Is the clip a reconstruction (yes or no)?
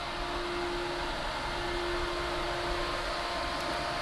no